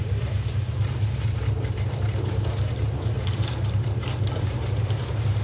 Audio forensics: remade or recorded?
remade